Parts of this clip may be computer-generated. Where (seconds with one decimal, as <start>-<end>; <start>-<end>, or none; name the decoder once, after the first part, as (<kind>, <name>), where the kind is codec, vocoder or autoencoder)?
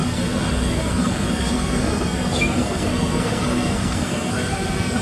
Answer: 0.0-5.0 (codec, SNAC)